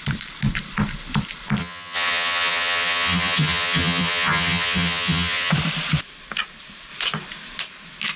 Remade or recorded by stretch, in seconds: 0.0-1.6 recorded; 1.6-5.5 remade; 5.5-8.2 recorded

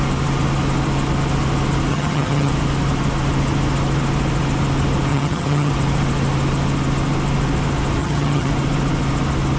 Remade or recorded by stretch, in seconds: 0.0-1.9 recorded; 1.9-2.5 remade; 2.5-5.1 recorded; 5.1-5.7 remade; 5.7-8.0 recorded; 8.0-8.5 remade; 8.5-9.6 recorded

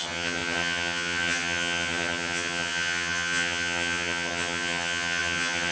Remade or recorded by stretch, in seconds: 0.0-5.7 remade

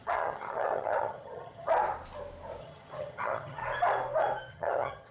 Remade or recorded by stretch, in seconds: 0.0-1.7 remade; 1.7-2.6 recorded; 2.6-3.6 remade; 3.6-4.5 recorded; 4.5-5.1 remade

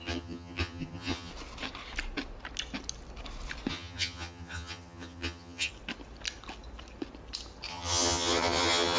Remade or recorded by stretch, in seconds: 0.0-1.3 remade; 1.3-3.7 recorded; 3.7-5.7 remade; 5.7-7.7 recorded; 7.7-9.0 remade

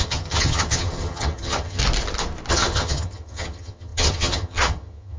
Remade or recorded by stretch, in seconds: 0.0-1.8 remade; 1.8-2.5 recorded; 2.5-5.2 remade